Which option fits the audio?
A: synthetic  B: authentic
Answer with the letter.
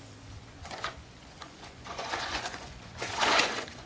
A